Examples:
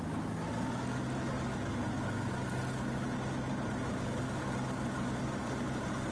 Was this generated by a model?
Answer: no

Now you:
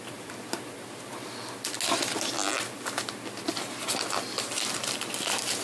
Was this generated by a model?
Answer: no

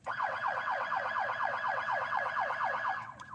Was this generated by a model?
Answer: yes